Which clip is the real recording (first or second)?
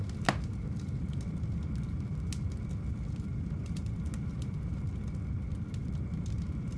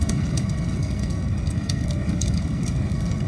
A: first